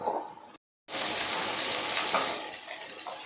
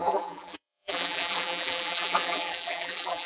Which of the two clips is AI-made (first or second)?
second